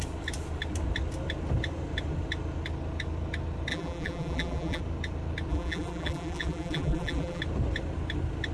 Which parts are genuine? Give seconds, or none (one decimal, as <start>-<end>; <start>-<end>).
0.0-3.7; 4.8-5.5; 7.4-8.5

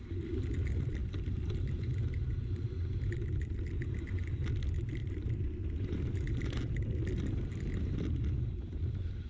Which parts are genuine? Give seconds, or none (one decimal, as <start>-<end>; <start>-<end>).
0.0-5.0; 7.0-9.3